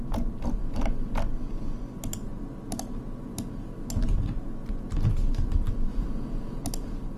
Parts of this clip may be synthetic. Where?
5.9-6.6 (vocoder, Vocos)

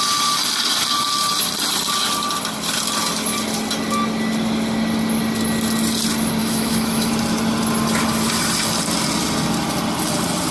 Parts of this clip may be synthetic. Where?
6.4-7.1 (autoencoder, DAC-VAE)